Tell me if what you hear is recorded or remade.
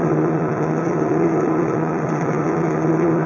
remade